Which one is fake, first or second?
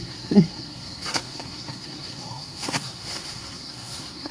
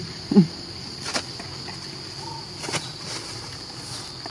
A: first